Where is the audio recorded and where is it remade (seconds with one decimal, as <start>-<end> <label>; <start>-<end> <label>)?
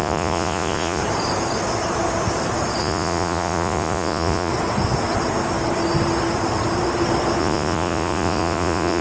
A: 0.0-1.0 remade; 1.0-2.8 recorded; 2.8-4.5 remade; 4.5-7.4 recorded; 7.4-9.0 remade